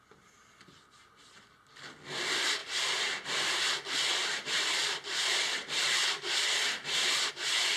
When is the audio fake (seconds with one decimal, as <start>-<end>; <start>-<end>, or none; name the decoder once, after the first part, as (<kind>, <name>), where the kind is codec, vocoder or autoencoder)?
2.6-7.3 (vocoder, BigVGAN v2)